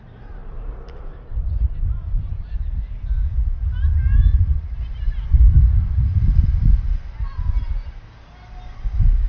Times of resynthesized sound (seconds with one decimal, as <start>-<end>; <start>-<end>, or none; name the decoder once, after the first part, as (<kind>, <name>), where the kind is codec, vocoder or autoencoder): 0.4-3.0 (vocoder, BigVGAN v2); 4.3-4.8